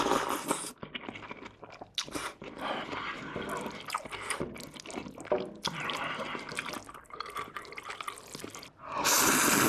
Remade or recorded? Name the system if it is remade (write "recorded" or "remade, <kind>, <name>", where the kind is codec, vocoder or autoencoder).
recorded